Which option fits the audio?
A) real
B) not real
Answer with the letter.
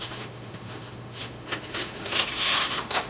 B